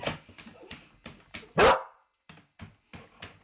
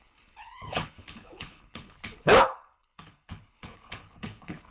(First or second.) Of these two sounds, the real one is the first